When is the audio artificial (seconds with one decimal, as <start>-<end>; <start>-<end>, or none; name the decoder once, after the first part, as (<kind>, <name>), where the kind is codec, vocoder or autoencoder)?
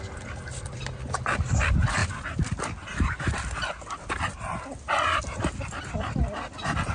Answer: none